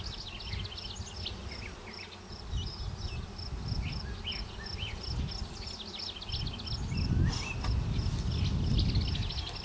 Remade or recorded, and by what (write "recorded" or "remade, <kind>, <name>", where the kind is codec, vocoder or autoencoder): recorded